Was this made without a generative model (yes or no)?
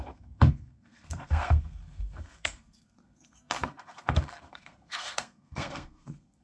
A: no